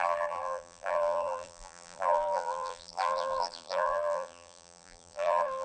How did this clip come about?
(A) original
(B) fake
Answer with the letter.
B